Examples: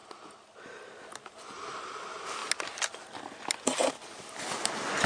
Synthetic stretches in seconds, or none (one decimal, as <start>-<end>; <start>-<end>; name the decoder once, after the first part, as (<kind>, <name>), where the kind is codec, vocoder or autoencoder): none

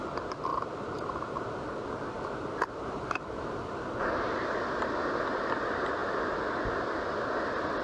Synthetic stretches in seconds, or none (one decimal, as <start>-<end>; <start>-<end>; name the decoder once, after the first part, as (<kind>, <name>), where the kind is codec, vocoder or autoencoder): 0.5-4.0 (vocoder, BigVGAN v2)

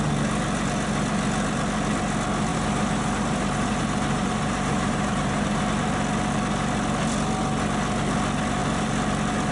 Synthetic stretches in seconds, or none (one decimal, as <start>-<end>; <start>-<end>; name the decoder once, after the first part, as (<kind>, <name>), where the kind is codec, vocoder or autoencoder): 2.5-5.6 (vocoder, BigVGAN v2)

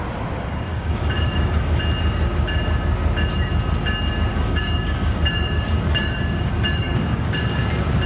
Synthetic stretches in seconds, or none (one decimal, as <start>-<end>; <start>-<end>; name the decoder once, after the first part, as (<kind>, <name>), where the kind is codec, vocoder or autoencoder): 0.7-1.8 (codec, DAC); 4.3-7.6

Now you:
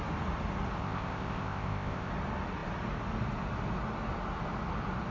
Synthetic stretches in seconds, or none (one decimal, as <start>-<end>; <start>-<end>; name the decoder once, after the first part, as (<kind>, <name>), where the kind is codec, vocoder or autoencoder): 0.8-2.1 (codec, ZipCodec)